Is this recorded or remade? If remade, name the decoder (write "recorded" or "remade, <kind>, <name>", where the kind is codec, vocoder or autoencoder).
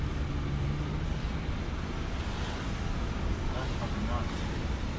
recorded